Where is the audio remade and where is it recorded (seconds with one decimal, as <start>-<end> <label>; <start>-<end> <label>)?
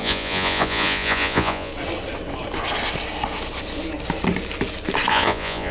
0.0-1.7 remade; 1.7-5.1 recorded; 5.1-5.7 remade